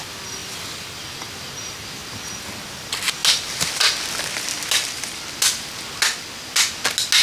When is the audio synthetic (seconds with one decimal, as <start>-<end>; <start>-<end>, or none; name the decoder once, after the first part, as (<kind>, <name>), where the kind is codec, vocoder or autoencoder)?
none